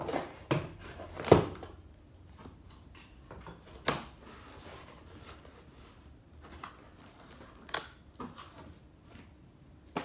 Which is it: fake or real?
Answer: real